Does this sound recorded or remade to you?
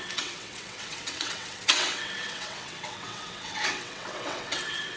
remade